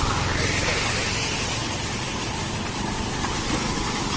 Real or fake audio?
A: real